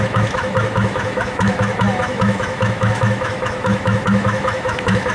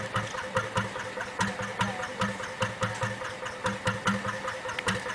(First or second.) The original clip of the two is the second